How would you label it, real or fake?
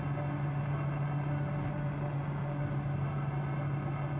real